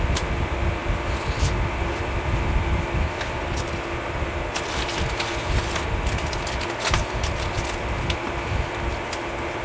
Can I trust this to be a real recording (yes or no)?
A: yes